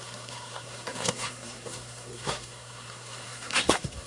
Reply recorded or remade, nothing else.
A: remade